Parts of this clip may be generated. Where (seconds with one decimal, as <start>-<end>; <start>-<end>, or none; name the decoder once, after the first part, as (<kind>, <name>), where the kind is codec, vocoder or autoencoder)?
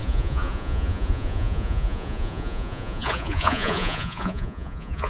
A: 0.0-5.1 (vocoder, Vocos)